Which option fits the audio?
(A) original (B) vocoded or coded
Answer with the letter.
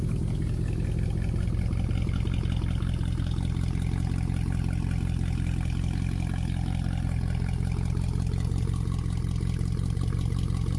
A